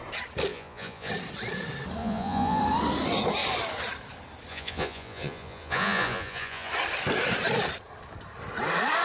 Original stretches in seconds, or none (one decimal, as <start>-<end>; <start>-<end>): 0.0-0.5; 1.1-2.0; 2.6-4.5; 6.7-9.0